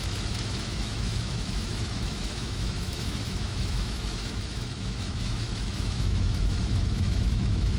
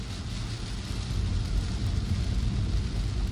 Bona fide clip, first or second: second